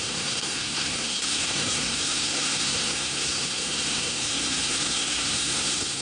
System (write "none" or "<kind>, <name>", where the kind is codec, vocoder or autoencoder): codec, SNAC